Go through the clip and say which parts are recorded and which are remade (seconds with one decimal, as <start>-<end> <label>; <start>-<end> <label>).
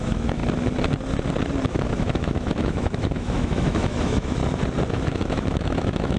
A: 0.0-0.4 remade; 0.4-1.7 recorded; 1.7-4.4 remade; 4.4-4.9 recorded; 4.9-6.2 remade